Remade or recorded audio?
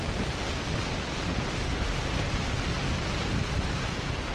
recorded